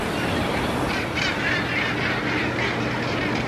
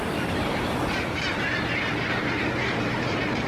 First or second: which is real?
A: first